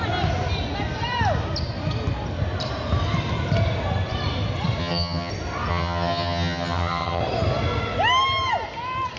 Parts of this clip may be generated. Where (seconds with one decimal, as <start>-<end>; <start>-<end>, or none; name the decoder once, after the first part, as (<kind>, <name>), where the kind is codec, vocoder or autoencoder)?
4.8-5.3 (vocoder, HiFi-GAN); 5.7-7.2